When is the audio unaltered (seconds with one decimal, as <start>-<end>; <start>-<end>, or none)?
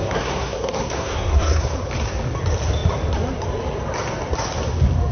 1.7-5.1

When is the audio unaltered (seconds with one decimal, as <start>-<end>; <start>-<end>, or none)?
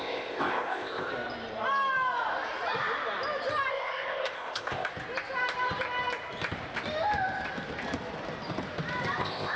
1.1-3.7; 4.9-9.2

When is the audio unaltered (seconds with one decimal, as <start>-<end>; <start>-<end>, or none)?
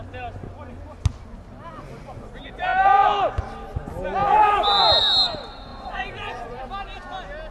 0.0-5.7; 6.6-7.5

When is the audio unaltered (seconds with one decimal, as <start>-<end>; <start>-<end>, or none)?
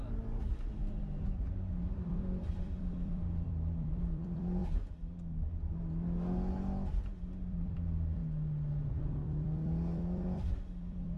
0.0-1.9; 4.6-7.2; 8.2-8.9